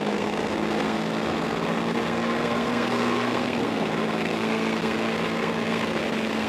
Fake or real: fake